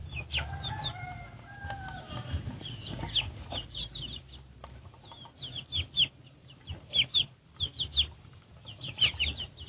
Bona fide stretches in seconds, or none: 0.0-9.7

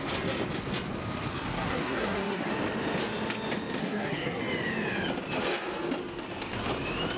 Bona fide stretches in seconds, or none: 0.0-1.3; 2.5-3.8; 4.4-7.2

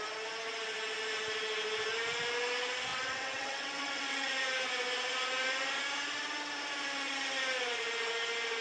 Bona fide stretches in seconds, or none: 0.0-2.9; 4.3-8.6

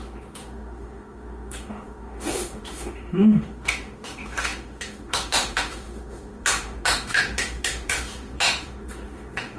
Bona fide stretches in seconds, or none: none

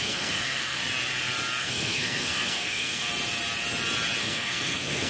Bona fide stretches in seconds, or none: 0.8-1.6; 3.1-4.2

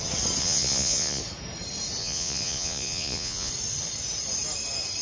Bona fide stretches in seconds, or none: 0.0-0.4; 1.2-2.0; 3.5-5.0